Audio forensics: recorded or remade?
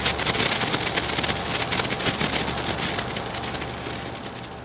recorded